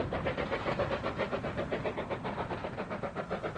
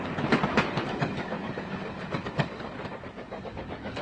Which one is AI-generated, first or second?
second